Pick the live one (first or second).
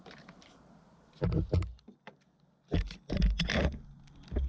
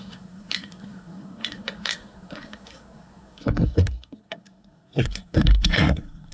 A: first